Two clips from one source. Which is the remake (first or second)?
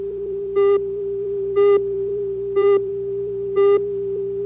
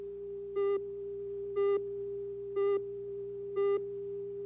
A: first